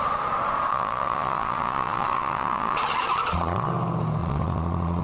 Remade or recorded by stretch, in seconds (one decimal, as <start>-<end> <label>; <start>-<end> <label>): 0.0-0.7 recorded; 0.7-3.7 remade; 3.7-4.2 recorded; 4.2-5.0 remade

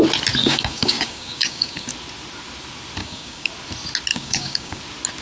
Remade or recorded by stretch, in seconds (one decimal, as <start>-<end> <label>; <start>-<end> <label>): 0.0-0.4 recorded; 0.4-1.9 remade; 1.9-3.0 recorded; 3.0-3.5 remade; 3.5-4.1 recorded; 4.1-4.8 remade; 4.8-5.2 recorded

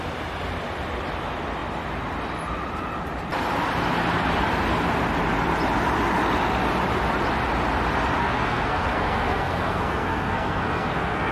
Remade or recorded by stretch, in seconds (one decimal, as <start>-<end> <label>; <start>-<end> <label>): 0.0-8.2 recorded; 8.2-11.3 remade